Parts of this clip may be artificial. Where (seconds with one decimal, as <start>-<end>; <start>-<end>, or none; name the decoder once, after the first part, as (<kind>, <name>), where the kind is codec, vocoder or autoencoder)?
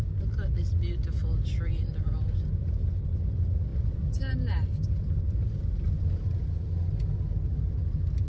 none